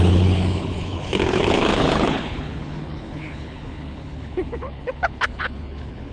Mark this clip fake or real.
fake